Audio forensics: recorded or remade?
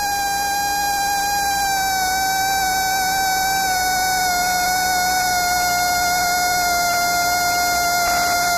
recorded